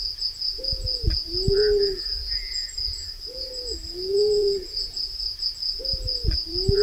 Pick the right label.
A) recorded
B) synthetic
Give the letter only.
B